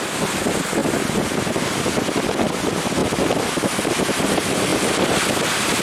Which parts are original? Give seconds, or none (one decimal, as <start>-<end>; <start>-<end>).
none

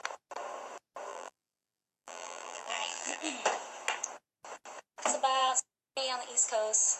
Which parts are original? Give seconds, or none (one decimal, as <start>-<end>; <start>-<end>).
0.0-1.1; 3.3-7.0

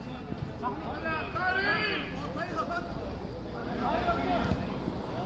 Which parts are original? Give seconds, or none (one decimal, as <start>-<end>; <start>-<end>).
0.0-1.7; 2.7-3.6

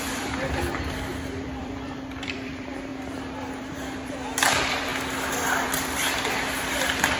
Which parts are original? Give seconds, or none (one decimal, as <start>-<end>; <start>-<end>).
2.9-3.5; 4.9-5.5

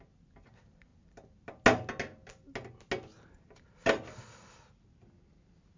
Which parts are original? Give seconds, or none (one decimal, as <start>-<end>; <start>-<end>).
0.0-5.8